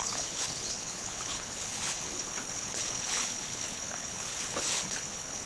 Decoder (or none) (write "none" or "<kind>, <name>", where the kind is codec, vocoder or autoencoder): codec, HILCodec